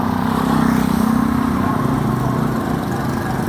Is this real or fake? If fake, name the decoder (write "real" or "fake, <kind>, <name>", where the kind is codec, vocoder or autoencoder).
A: real